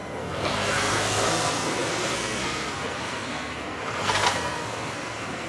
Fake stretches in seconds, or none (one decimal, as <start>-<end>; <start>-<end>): 0.0-5.5